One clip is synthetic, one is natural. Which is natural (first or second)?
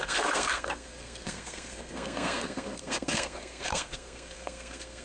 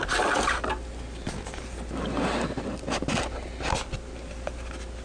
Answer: second